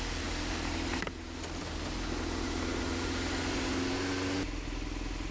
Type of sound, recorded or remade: recorded